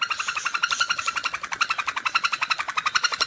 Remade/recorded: recorded